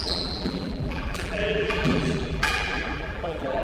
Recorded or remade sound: remade